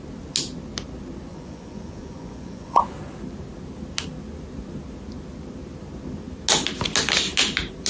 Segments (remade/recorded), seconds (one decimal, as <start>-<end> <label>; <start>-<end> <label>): 0.0-1.3 recorded; 1.3-2.8 remade; 2.8-7.9 recorded

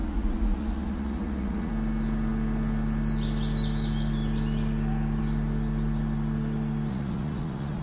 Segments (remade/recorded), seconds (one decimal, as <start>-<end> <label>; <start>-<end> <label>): 0.0-1.7 remade; 1.7-6.9 recorded; 6.9-7.8 remade